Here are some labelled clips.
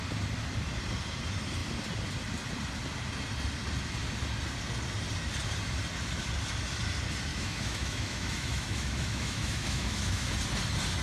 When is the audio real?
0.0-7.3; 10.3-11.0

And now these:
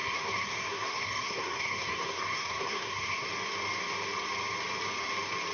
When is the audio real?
3.3-5.5

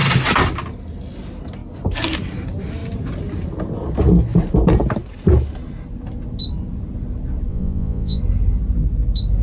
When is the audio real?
0.0-7.5; 8.2-9.4

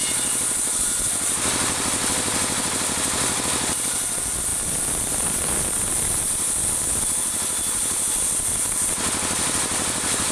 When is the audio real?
none